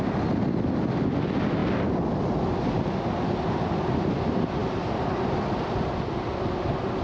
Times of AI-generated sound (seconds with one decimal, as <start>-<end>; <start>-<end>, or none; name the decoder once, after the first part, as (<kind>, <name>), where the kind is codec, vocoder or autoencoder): none

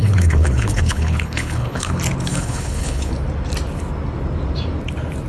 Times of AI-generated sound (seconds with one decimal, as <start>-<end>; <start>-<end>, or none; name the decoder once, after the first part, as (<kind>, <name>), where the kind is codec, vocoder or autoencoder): 0.0-1.9 (codec, HILCodec); 2.3-3.1

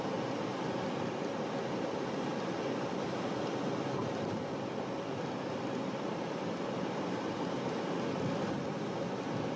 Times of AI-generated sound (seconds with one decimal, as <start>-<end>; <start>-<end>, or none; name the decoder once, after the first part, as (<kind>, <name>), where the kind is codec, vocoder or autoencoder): none

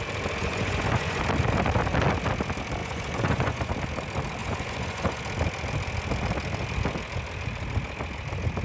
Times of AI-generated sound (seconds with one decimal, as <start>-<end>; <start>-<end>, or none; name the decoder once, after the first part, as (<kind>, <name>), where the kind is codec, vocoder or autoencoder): 0.4-1.2 (vocoder, Vocos); 2.8-3.7; 4.4-5.2

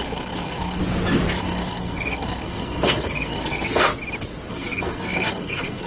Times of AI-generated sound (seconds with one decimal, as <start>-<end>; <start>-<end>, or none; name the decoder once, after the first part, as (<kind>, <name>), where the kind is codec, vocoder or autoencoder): 0.0-0.8 (codec, SNAC); 1.4-3.9; 4.5-5.9

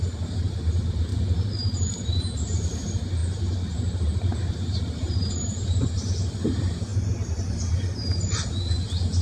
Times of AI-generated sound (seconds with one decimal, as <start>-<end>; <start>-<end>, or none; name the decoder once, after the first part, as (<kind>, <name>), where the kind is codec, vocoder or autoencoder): 0.0-1.1 (vocoder, BigVGAN v2); 1.8-6.9

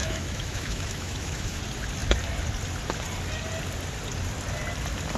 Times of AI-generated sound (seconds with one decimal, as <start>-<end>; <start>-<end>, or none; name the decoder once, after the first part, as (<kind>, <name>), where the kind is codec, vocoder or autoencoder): 0.0-1.6 (autoencoder, DAC-VAE)